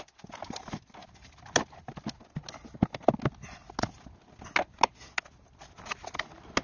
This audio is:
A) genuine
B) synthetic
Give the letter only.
A